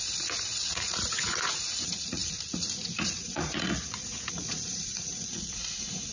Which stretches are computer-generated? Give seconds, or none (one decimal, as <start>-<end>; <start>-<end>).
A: 0.0-6.1